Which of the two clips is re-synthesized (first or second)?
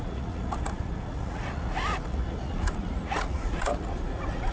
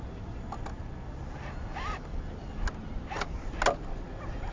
first